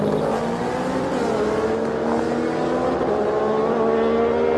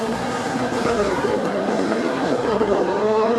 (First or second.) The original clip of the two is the first